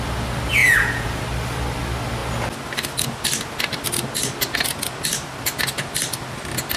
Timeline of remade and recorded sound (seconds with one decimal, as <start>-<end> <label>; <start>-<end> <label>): 0.0-0.6 recorded; 0.6-1.2 remade; 1.2-6.8 recorded